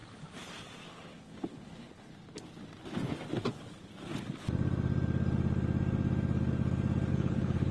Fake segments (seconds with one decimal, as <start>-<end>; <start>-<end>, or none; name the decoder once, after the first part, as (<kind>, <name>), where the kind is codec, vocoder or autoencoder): 0.9-2.1 (codec, HILCodec); 3.5-3.9; 7.1-7.7